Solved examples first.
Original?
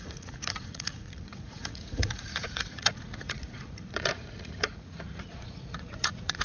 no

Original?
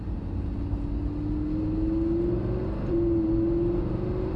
yes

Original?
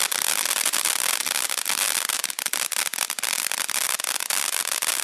yes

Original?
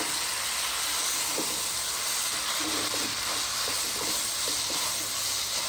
yes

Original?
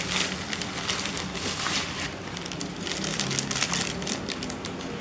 yes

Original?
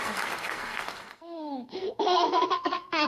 no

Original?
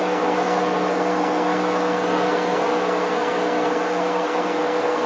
no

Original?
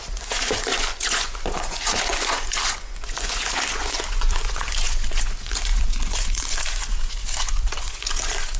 no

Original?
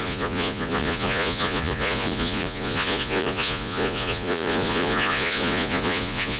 no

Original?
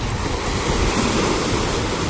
yes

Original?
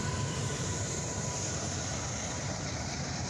no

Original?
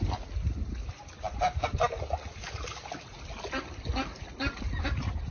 yes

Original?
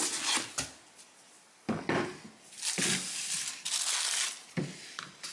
yes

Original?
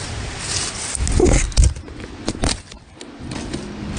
yes